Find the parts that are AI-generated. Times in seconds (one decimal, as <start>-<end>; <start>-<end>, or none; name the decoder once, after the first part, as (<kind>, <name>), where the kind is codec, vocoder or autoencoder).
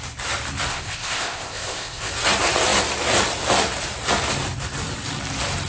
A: 0.7-2.1 (codec, ZipCodec)